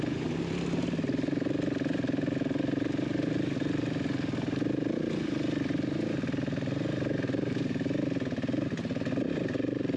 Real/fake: real